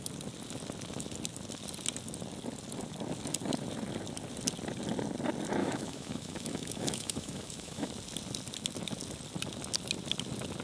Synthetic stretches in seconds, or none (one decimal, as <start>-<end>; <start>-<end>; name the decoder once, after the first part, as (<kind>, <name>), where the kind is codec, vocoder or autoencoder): 5.6-7.9 (autoencoder, DAC-VAE)